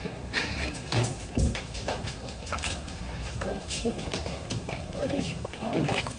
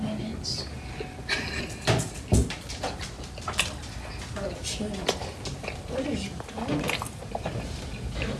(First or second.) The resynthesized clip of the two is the first